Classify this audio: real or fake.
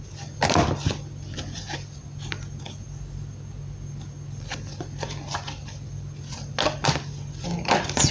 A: real